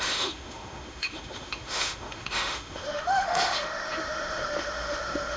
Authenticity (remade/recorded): remade